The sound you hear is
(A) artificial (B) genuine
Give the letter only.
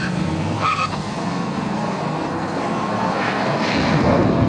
A